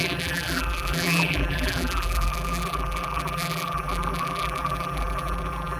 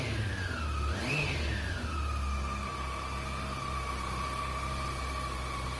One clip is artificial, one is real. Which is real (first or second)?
second